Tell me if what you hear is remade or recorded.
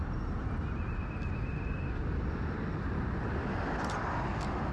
recorded